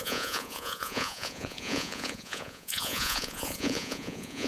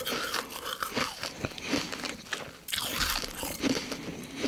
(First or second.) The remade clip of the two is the first